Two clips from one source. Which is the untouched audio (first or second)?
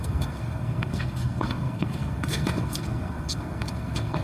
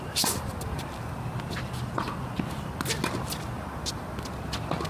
second